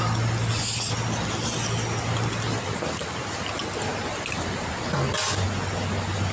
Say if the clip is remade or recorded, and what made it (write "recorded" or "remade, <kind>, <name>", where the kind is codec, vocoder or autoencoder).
recorded